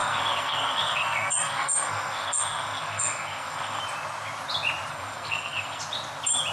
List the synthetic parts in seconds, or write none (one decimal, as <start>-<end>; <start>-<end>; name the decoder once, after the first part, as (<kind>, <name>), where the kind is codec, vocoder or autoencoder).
0.0-3.8 (codec, SNAC); 4.9-5.8